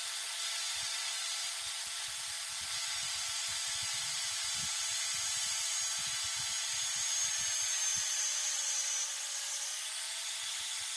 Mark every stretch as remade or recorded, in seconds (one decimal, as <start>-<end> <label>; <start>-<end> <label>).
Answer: 0.0-7.9 recorded; 7.9-8.8 remade; 8.8-11.0 recorded